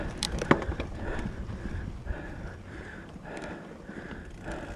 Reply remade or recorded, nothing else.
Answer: remade